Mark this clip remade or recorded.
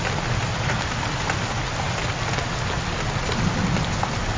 recorded